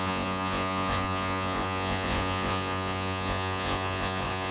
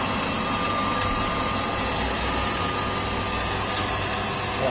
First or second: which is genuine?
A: second